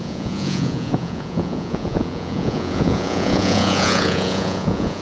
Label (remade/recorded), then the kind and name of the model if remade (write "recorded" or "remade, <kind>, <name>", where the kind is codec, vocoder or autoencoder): remade, vocoder, Vocos